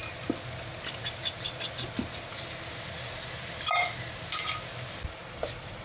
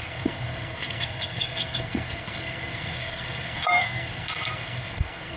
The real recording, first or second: first